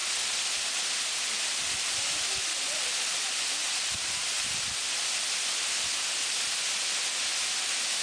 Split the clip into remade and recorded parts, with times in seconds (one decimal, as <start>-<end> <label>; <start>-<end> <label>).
0.0-8.0 recorded